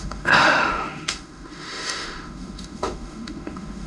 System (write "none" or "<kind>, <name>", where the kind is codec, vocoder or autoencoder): autoencoder, DAC-VAE